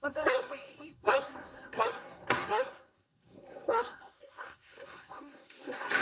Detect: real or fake fake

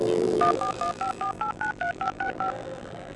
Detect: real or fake fake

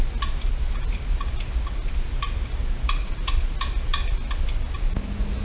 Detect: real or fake real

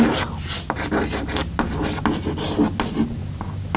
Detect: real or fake real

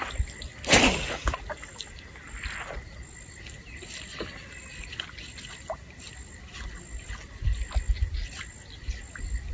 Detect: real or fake real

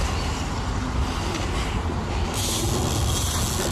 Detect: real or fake real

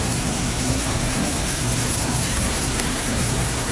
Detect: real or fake fake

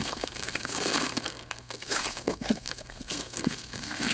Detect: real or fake fake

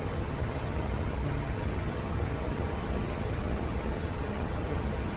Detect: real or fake fake